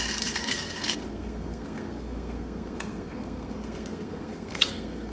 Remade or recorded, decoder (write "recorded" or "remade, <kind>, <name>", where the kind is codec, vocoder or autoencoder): remade, codec, SNAC